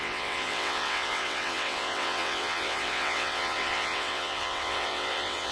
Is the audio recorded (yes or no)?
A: no